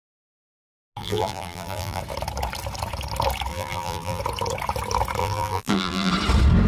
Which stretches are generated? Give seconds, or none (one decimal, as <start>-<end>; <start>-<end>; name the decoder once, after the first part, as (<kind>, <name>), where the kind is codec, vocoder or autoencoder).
1.0-2.0 (vocoder, BigVGAN v2); 3.5-4.2; 5.2-6.1